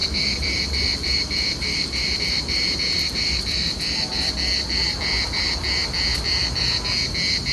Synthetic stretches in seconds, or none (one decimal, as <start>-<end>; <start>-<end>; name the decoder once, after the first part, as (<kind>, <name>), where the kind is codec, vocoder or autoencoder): 0.0-4.3 (vocoder, BigVGAN v2)